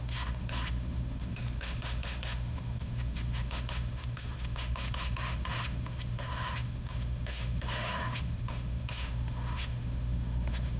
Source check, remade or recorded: remade